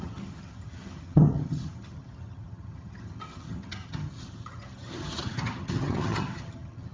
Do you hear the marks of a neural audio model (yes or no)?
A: yes